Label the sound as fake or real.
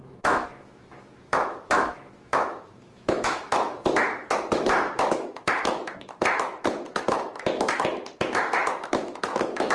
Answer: fake